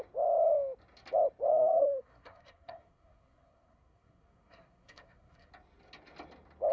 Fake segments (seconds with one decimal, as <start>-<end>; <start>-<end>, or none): 1.5-5.5